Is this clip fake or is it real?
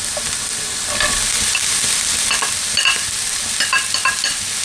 real